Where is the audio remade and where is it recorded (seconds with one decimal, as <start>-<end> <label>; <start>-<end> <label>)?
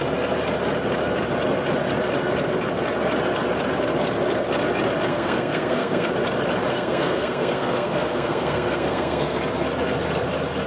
0.0-5.1 recorded; 5.1-6.1 remade; 6.1-6.7 recorded; 6.7-9.4 remade; 9.4-10.7 recorded